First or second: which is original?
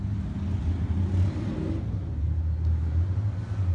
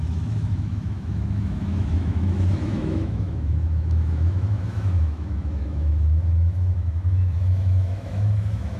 first